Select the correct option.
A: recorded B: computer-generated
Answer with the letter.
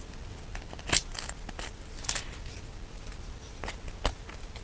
A